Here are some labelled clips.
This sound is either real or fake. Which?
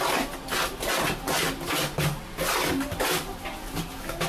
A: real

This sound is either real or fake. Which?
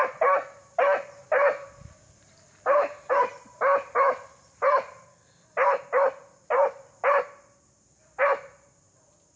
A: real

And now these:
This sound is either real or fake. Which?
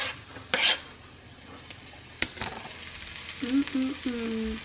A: real